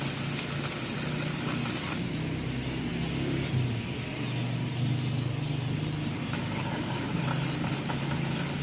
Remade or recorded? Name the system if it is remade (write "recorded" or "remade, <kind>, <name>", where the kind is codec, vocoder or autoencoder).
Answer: recorded